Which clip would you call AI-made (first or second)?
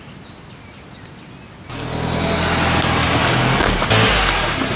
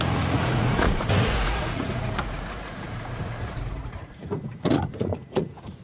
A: second